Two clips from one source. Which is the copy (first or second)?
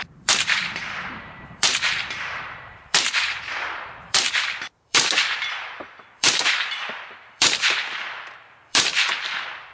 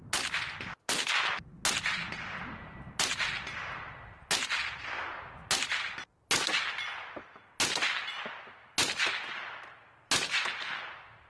first